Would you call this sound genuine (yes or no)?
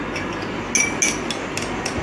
yes